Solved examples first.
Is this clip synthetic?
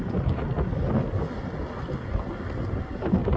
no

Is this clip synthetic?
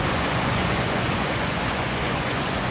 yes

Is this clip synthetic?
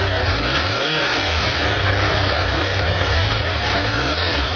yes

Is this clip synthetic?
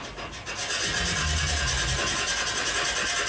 no